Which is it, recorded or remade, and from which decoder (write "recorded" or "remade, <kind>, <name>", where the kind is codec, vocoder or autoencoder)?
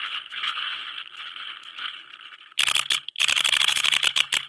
remade, codec, HILCodec